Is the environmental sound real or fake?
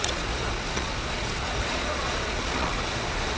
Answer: fake